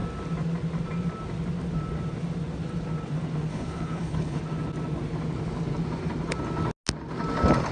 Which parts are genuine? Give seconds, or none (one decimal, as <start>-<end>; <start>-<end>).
0.0-3.5; 4.4-7.7

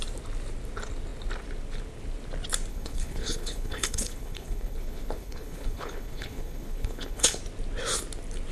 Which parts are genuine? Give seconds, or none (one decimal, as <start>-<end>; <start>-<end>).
0.0-2.7; 7.4-8.5

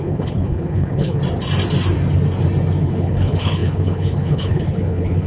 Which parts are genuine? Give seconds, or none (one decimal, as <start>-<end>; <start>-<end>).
1.2-2.8

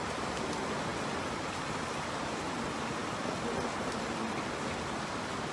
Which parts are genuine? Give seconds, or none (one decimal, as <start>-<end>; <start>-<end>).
0.0-5.5

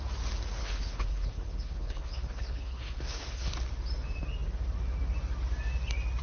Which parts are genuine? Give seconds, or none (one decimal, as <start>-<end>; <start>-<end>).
0.0-0.6; 3.5-6.2

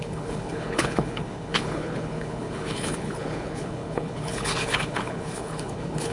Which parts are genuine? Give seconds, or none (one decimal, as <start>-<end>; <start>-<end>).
none

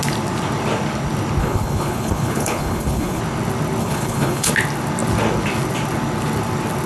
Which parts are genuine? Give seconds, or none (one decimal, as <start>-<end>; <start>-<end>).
0.0-1.4; 3.2-3.8; 4.5-6.9